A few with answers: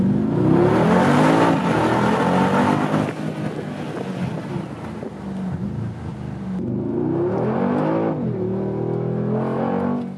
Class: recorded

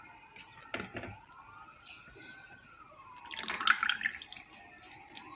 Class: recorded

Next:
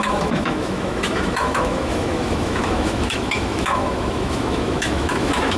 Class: remade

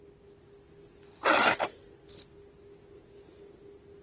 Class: recorded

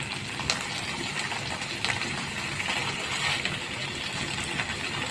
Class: recorded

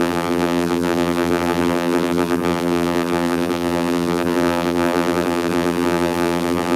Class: remade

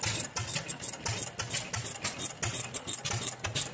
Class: recorded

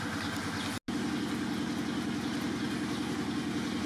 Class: recorded